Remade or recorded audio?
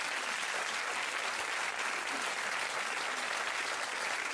recorded